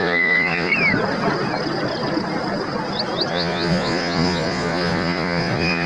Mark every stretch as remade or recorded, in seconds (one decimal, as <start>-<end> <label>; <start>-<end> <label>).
0.0-0.7 remade; 0.7-3.3 recorded; 3.3-5.9 remade